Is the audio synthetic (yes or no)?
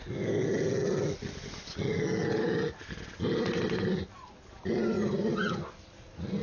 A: no